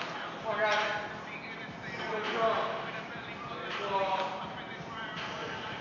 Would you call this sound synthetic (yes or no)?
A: no